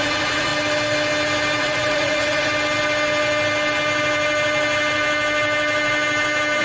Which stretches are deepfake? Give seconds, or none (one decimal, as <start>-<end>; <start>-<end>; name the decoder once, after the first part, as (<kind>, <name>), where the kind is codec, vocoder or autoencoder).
0.0-0.5 (vocoder, Vocos); 1.6-2.5